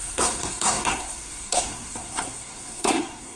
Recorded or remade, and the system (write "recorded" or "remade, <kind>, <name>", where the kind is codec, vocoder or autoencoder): remade, codec, SNAC